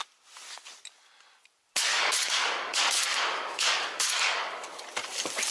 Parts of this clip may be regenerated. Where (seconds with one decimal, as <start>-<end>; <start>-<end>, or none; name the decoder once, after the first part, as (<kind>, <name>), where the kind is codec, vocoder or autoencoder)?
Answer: 1.9-4.8 (codec, DAC)